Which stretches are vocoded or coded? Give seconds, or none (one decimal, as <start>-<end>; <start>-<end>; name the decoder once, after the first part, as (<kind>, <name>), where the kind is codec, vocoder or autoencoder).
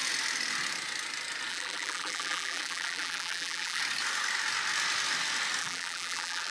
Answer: 1.5-3.8 (vocoder, BigVGAN v2); 5.6-6.5